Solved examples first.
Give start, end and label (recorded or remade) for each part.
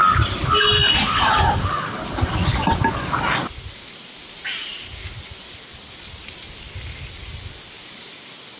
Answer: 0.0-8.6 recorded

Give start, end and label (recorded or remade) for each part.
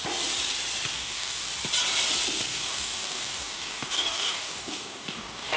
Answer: 0.0-0.9 recorded; 0.9-1.5 remade; 1.5-2.5 recorded; 2.5-5.6 remade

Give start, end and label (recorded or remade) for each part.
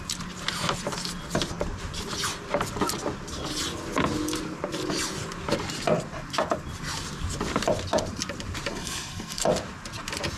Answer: 0.0-8.7 recorded; 8.7-9.4 remade; 9.4-10.4 recorded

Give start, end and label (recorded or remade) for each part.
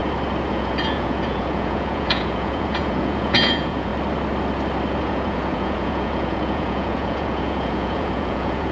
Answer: 0.0-0.5 recorded; 0.5-3.9 remade; 3.9-5.0 recorded; 5.0-8.7 remade